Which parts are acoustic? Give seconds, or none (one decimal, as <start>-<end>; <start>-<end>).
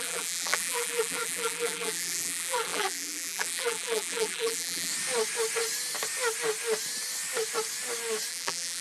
4.9-8.3